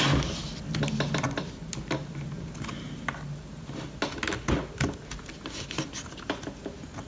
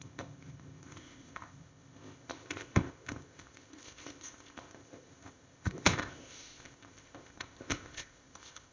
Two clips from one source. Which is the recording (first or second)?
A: first